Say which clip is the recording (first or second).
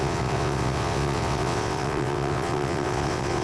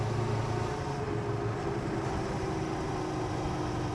second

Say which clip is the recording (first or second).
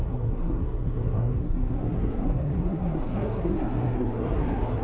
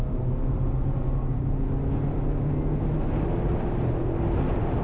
second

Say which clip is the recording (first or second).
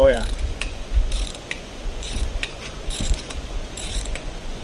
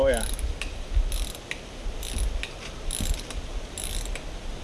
second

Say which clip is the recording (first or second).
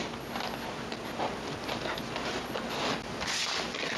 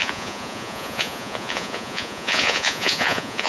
first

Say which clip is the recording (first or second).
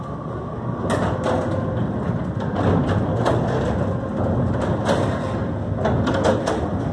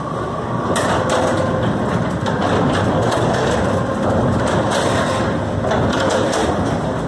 first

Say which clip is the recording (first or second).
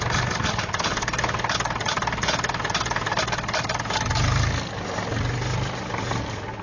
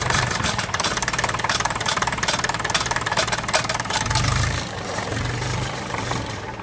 first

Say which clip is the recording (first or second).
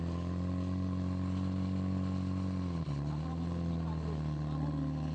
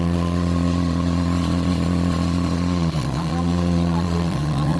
first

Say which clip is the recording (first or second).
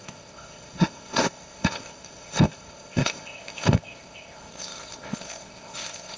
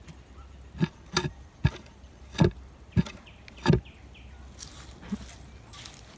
second